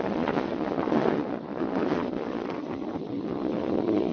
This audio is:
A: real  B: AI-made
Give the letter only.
B